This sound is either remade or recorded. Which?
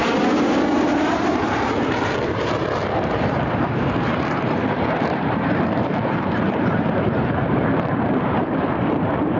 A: remade